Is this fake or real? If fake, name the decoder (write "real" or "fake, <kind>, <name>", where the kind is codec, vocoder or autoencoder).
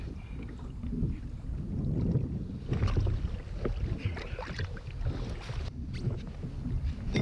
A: real